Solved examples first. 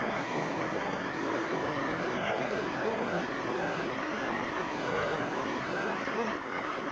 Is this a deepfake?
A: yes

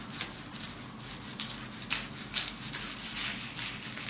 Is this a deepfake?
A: no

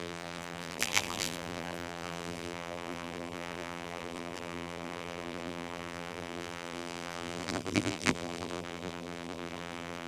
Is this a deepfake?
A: yes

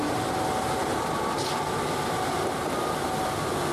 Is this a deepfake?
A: no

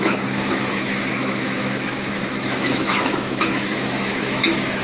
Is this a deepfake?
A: yes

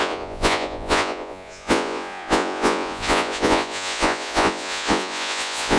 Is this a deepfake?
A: yes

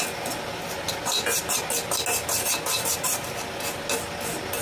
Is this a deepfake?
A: no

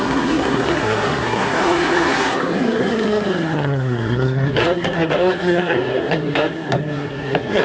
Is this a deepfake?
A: yes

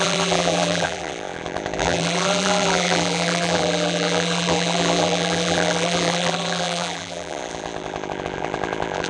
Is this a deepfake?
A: yes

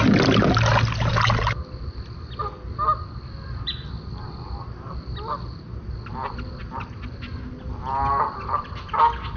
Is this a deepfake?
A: no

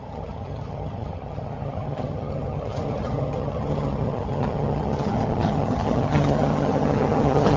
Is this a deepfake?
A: yes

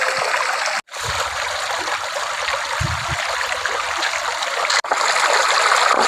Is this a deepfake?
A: no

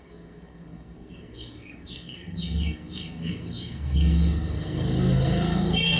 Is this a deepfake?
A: yes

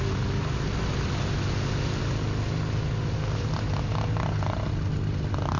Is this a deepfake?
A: no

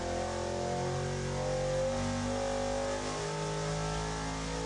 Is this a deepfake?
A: no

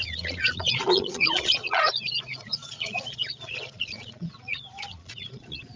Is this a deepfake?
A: yes